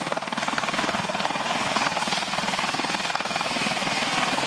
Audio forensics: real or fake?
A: fake